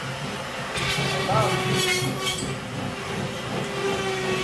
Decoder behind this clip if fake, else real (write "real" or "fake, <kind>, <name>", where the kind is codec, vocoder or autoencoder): real